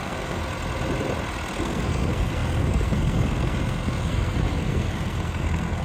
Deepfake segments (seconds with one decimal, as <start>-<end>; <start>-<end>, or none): 0.0-0.4; 1.6-5.8